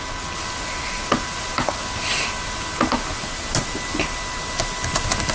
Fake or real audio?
real